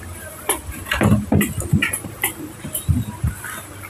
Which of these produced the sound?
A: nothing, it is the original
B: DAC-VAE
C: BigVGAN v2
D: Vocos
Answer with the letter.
A